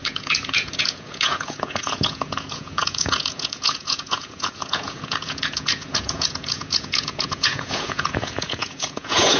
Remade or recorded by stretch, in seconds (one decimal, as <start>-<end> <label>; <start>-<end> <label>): 0.0-9.4 remade